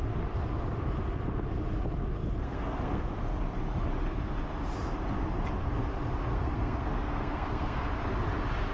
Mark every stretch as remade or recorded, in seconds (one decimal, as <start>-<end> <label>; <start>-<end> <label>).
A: 0.0-2.4 recorded; 2.4-3.1 remade; 3.1-6.3 recorded; 6.3-7.8 remade; 7.8-8.7 recorded